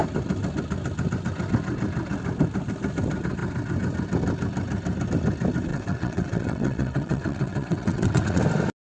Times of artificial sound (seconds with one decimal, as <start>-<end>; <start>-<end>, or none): 5.7-8.4